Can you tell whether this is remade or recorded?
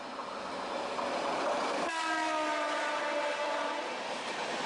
recorded